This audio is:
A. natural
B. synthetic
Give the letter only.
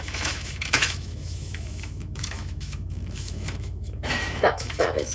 B